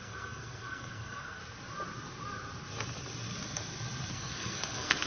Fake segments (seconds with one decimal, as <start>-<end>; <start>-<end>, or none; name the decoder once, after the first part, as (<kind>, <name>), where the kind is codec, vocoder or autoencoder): 0.0-1.4 (codec, SNAC); 4.1-5.1

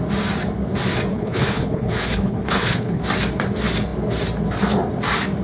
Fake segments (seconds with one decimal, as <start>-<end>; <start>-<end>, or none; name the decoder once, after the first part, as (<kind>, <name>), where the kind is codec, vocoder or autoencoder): 1.1-3.0 (codec, HILCodec)

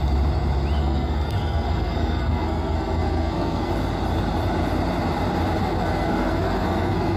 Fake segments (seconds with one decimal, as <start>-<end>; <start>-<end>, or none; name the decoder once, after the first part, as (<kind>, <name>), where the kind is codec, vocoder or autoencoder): 0.8-3.7 (codec, SNAC); 5.6-7.2

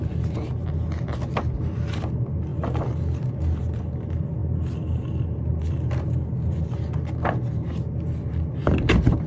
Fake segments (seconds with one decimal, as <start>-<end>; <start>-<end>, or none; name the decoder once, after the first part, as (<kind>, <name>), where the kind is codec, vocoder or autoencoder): none

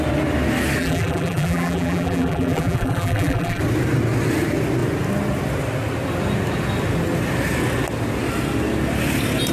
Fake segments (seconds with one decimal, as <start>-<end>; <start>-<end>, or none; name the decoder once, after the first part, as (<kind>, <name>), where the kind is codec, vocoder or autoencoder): 0.8-3.6 (vocoder, BigVGAN v2)

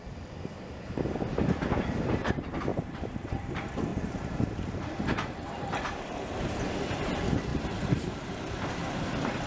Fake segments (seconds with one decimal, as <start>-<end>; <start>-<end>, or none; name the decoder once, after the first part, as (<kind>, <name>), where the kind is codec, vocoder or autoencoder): 2.7-3.5 (vocoder, BigVGAN v2); 3.9-6.3; 7.5-8.7

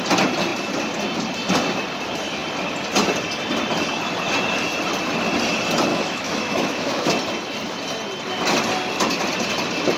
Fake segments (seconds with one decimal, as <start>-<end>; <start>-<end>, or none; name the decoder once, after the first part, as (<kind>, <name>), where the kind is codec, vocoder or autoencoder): 5.9-7.1 (autoencoder, DAC-VAE)

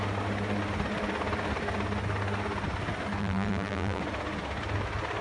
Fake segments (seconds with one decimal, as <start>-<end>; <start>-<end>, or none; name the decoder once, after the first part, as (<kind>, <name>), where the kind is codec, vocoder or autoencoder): 3.2-4.0 (vocoder, BigVGAN v2)